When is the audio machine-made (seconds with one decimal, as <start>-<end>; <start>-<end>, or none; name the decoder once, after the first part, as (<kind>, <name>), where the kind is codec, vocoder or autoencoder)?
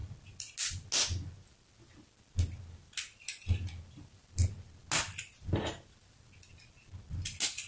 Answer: none